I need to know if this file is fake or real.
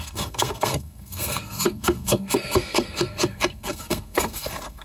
fake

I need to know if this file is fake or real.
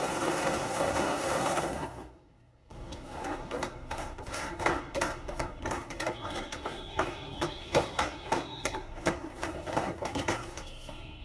fake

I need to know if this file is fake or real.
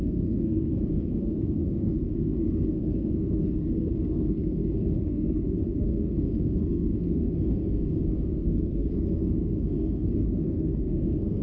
fake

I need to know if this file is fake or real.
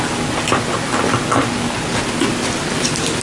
real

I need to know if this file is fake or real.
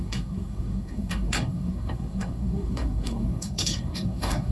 fake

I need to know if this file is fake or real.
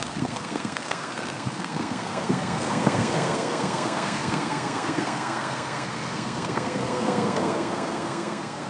fake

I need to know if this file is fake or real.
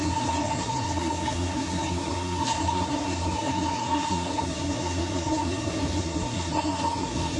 fake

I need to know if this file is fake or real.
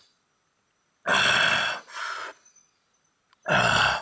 real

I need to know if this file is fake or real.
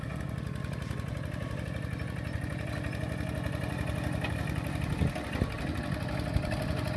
real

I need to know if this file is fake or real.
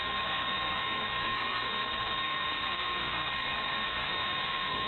fake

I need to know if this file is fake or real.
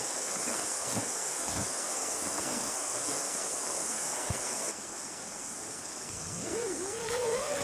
fake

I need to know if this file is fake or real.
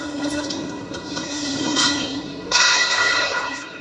fake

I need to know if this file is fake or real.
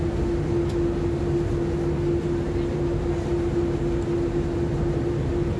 real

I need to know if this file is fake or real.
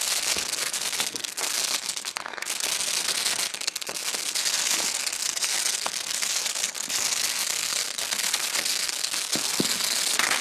fake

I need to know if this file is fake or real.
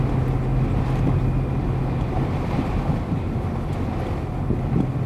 real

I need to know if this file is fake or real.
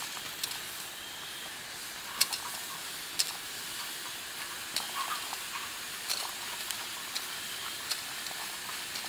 real